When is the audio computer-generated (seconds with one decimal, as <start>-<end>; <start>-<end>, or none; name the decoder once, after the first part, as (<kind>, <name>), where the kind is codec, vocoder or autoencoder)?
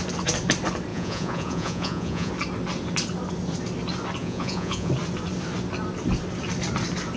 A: 0.9-2.3 (vocoder, Vocos); 4.2-4.9